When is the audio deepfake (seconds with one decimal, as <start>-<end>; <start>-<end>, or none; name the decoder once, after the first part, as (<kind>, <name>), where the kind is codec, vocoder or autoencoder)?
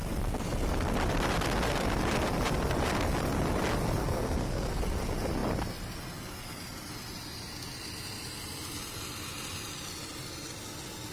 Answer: 4.0-4.8 (codec, SNAC)